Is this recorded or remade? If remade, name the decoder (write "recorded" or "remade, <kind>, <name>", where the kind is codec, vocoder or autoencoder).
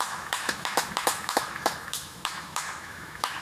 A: remade, autoencoder, DAC-VAE